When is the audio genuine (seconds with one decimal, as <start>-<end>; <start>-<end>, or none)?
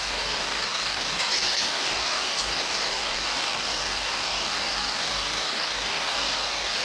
none